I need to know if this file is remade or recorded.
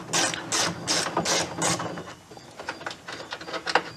recorded